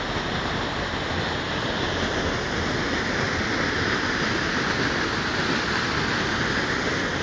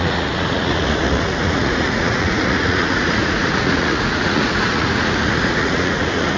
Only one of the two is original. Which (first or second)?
first